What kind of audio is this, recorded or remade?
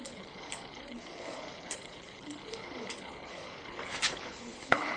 remade